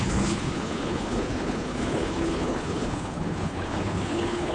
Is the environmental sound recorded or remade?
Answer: remade